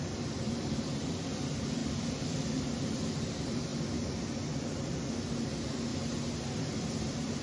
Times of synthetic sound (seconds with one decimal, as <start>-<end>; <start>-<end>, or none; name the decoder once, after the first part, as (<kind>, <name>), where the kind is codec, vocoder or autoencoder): 0.0-3.7 (vocoder, BigVGAN v2); 4.5-5.9; 7.0-7.4